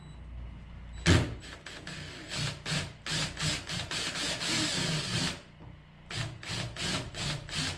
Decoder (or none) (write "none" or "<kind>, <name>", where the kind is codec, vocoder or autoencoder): none